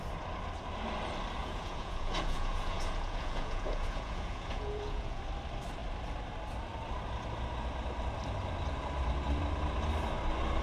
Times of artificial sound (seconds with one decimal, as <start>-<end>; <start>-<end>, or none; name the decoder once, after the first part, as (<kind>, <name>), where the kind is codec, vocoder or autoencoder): 1.4-5.2 (vocoder, Vocos)